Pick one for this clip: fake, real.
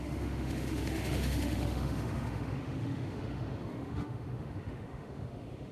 fake